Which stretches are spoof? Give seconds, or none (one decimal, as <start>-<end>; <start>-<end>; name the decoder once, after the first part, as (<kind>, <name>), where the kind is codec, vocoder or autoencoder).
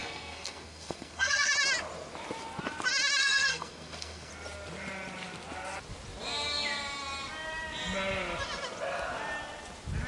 0.0-1.5 (codec, SNAC); 3.2-4.3